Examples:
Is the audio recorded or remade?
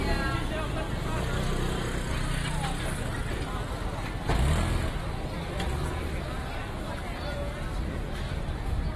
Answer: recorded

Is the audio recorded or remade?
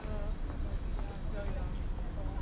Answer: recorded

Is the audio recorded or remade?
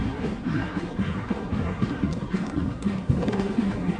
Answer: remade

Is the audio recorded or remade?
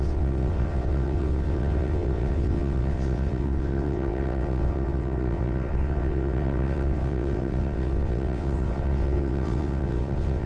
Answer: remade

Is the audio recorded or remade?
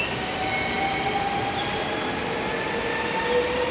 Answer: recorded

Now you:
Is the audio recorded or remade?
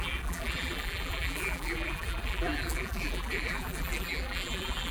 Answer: remade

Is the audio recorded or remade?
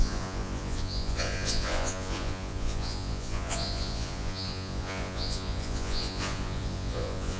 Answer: remade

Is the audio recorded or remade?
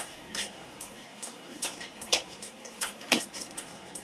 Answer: remade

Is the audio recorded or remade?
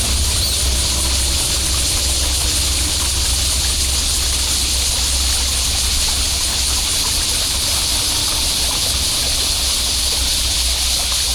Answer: recorded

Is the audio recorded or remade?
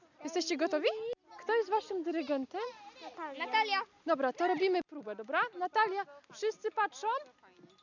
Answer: recorded